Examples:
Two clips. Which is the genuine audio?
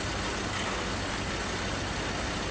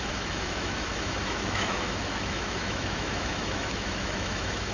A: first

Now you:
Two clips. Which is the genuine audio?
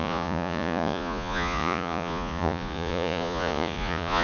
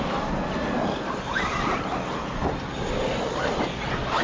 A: second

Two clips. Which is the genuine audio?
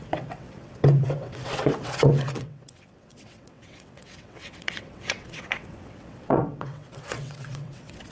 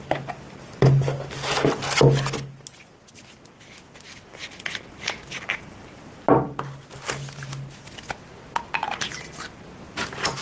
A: second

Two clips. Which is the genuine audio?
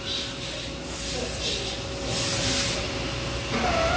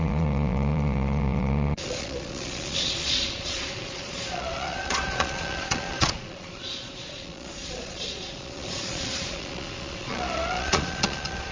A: first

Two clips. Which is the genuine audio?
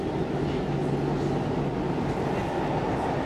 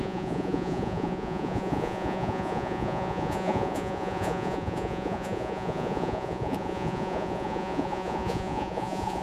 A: first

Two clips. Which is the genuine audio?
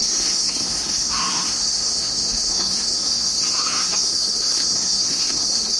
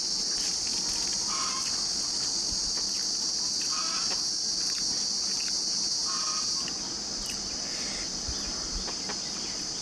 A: second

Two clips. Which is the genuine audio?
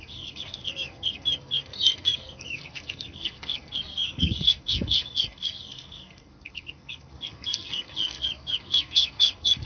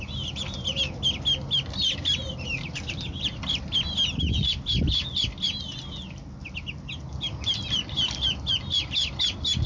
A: second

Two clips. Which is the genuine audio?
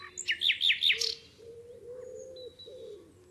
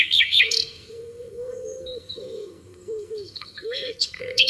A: first